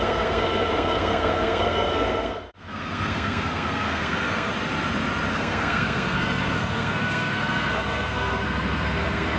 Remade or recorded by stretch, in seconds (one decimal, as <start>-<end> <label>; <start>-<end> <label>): 0.0-4.5 remade; 4.5-5.3 recorded; 5.3-9.4 remade